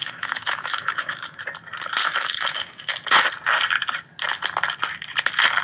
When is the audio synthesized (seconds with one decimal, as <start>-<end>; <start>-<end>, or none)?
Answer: 0.0-1.4; 2.0-2.9